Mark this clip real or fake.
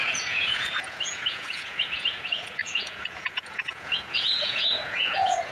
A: fake